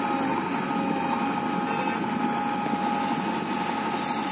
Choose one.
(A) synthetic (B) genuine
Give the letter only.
B